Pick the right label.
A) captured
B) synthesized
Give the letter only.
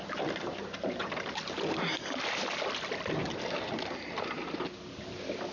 A